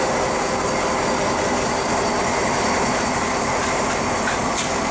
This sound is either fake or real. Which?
real